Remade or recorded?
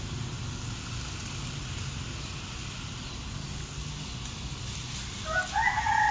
recorded